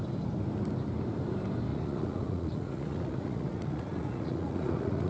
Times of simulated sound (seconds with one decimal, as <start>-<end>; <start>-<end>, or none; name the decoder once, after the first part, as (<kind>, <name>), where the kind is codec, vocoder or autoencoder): 1.7-5.1 (vocoder, Vocos)